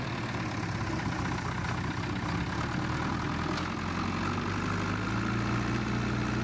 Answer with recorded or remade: recorded